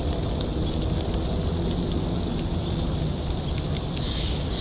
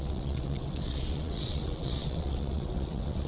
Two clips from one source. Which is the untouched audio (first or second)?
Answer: first